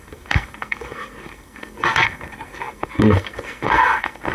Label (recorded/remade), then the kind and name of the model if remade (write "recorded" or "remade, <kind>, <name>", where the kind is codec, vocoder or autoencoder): remade, codec, SNAC